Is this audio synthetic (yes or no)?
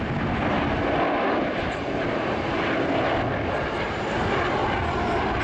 no